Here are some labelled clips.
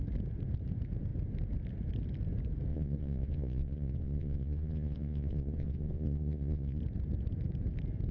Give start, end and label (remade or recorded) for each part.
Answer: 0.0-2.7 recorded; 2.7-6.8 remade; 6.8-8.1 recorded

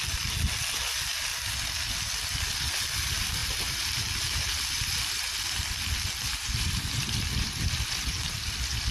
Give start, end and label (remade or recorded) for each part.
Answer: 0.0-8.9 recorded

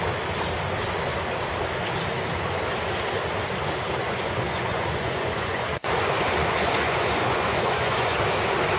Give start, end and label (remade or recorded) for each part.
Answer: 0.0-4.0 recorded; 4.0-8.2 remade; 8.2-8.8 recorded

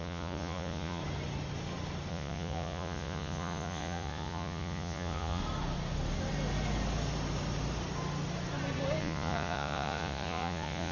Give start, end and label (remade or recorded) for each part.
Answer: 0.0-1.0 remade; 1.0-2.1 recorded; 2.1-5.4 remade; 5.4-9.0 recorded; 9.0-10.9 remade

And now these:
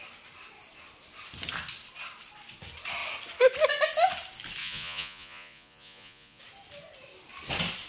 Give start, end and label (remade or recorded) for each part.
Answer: 0.0-4.6 recorded; 4.6-6.4 remade; 6.4-7.9 recorded